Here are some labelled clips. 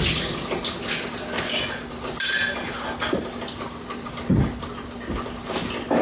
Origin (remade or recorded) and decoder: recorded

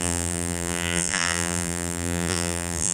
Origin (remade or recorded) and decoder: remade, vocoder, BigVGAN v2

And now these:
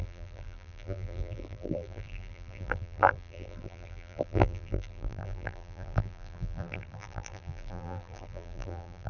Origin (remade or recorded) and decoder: remade, vocoder, BigVGAN v2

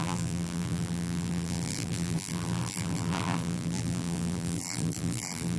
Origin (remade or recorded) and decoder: remade, vocoder, BigVGAN v2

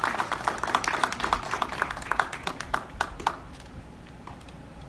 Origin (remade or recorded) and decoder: remade, vocoder, BigVGAN v2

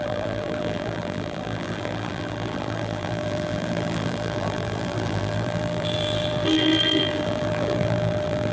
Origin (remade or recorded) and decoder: remade, vocoder, BigVGAN v2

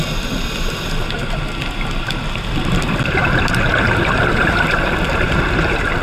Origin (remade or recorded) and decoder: recorded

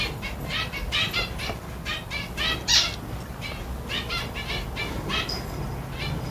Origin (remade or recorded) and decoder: recorded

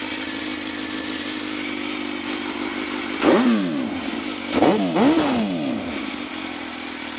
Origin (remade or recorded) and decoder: recorded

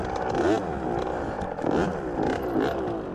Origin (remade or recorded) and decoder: recorded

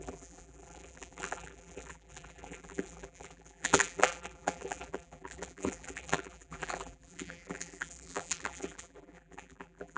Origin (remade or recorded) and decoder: remade, vocoder, BigVGAN v2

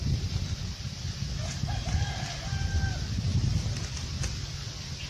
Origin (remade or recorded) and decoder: recorded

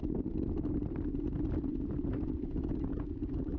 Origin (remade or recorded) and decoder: recorded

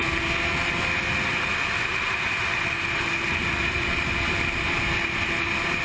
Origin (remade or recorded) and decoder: recorded